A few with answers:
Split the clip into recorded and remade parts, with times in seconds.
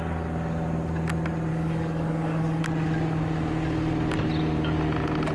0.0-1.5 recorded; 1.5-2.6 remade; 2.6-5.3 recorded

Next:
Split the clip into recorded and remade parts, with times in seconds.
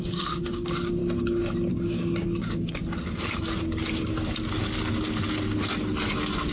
0.0-1.0 remade; 1.0-1.7 recorded; 1.7-2.8 remade; 2.8-6.5 recorded